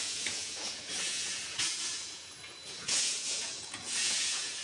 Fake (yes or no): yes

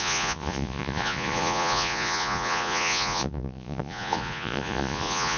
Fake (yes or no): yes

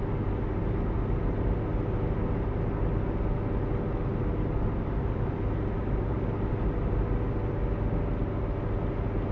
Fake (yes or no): no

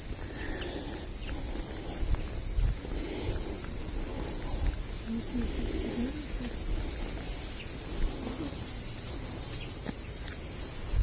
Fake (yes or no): no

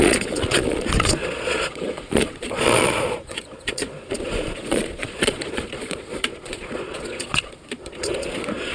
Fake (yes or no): yes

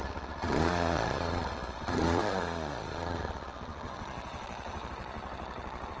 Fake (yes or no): yes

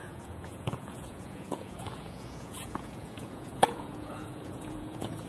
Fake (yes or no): yes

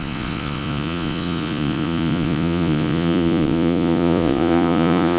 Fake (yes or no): yes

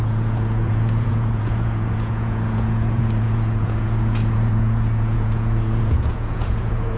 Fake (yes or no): yes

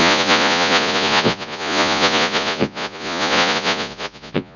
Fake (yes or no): yes